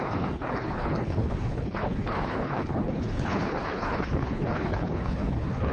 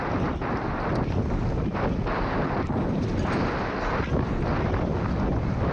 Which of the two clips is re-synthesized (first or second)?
first